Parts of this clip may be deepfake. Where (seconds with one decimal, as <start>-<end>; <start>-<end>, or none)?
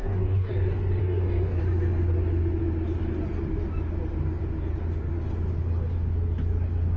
0.0-0.5; 1.0-1.6